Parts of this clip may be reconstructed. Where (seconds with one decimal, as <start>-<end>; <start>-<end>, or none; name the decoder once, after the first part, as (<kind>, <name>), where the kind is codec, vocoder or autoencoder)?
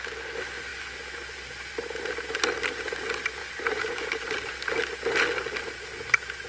3.4-4.7 (vocoder, BigVGAN v2)